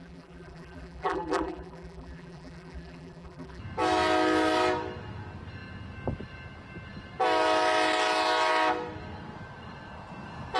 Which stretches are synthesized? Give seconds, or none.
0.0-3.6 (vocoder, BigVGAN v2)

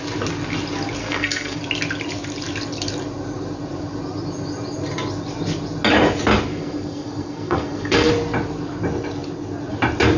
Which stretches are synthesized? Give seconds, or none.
1.0-1.6 (codec, SNAC); 6.5-8.1

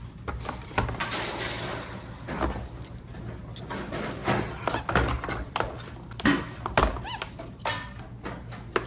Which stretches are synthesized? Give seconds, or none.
none

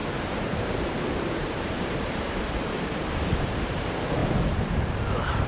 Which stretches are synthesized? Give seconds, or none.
0.0-4.2 (vocoder, BigVGAN v2); 4.7-5.5

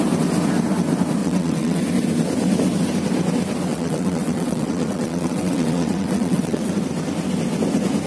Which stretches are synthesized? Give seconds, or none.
1.2-1.8 (vocoder, WaveNeXt); 3.7-6.7